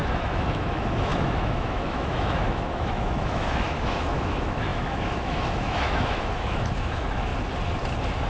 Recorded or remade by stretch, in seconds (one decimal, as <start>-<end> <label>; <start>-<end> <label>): 0.0-7.3 remade; 7.3-8.3 recorded